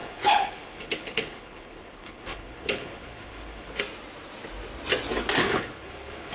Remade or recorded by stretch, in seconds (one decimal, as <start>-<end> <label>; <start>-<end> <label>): 0.0-3.8 remade; 3.8-5.4 recorded; 5.4-6.3 remade